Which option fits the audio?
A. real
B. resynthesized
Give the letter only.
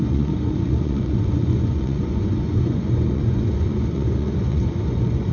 B